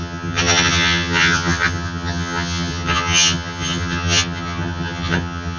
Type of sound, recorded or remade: remade